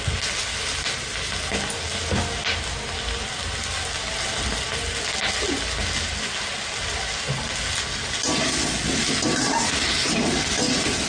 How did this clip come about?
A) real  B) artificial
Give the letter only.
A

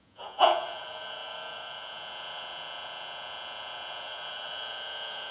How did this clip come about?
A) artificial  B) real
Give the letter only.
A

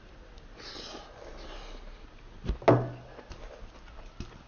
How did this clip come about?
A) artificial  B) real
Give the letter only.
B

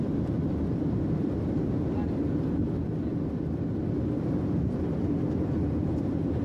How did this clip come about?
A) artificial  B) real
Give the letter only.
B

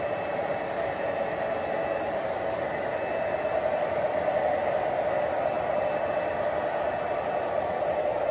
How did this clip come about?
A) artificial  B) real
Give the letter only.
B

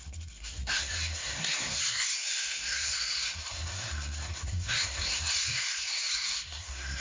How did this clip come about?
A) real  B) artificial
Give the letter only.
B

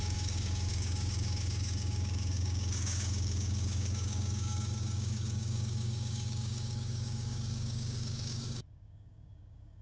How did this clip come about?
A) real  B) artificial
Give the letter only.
B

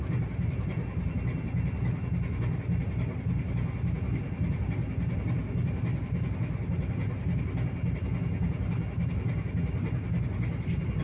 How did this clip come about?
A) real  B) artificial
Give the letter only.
A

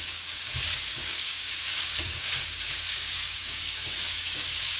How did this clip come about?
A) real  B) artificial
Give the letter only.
B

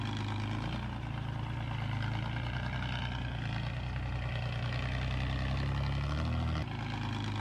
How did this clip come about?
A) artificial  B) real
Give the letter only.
B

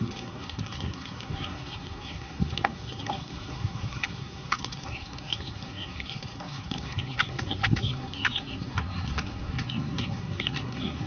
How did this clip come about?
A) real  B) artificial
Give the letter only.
B